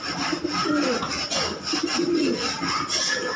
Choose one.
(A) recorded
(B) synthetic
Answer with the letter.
A